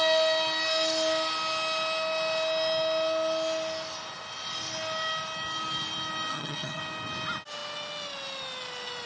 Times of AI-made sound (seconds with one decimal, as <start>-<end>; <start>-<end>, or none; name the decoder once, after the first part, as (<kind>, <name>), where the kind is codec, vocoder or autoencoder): 6.3-6.8 (vocoder, HiFi-GAN)